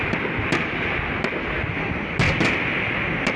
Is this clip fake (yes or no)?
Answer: no